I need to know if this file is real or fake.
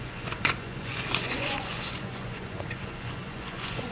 fake